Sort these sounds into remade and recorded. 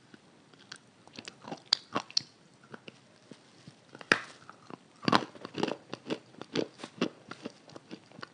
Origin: recorded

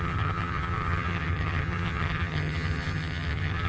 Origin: remade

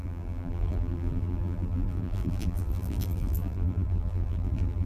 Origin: remade